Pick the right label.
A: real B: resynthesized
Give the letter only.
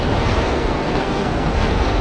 B